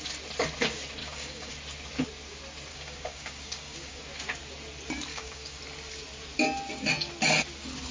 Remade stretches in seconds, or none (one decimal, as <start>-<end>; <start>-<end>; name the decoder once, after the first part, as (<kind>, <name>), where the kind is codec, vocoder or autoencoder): 1.0-1.5 (codec, DAC); 2.7-4.0; 5.1-5.6